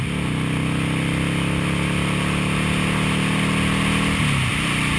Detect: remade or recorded recorded